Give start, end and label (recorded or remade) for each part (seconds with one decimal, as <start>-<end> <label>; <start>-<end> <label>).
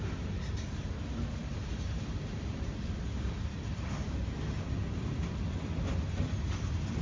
0.0-7.0 recorded